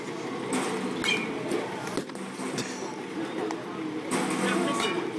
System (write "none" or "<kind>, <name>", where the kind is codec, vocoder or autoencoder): none